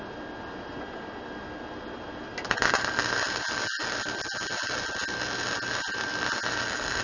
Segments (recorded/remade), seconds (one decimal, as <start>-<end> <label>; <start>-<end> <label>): 0.0-7.0 recorded